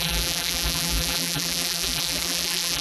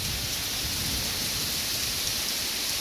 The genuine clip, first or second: second